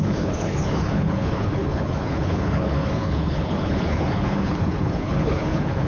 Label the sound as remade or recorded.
remade